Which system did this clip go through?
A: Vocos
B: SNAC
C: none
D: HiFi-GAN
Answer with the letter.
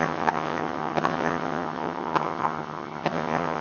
D